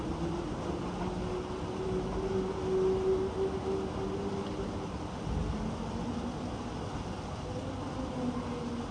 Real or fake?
real